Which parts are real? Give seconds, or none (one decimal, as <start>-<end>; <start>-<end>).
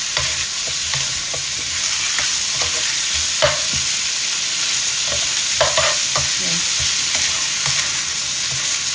0.0-8.9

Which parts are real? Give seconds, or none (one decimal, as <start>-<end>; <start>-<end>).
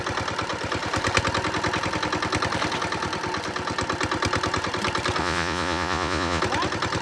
0.0-5.2; 6.4-7.0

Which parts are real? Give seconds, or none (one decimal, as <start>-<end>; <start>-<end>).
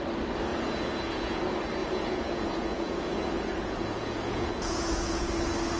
0.0-0.5; 1.4-1.8; 5.3-5.8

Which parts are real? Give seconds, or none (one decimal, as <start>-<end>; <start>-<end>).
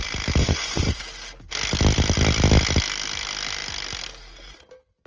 0.0-0.4; 1.0-5.1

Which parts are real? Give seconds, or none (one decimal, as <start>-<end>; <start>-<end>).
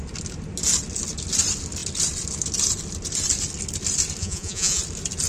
0.0-4.2; 4.8-5.3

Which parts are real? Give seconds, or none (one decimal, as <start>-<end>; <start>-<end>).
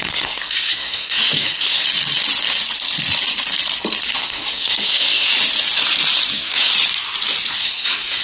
1.8-4.2; 5.3-6.3; 6.7-7.5